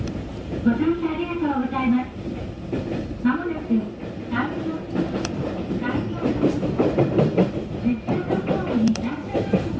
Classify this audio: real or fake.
fake